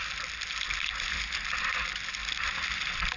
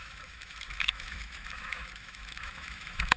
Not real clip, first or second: second